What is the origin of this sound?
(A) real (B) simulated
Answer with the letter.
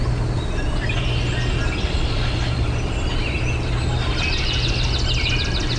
A